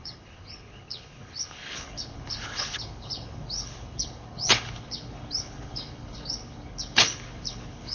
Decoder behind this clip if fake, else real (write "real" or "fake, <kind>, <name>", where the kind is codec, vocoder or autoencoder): fake, codec, HILCodec